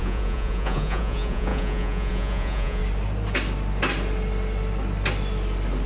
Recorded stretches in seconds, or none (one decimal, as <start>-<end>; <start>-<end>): 2.8-5.9